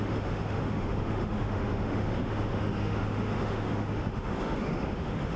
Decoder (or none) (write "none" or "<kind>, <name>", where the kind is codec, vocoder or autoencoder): autoencoder, DAC-VAE